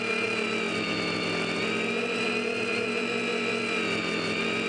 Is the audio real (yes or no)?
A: yes